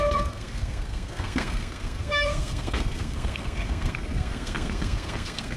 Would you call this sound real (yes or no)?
no